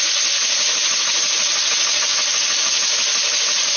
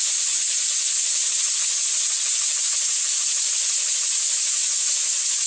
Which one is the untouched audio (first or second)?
first